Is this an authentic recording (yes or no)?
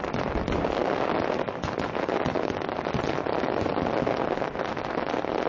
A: yes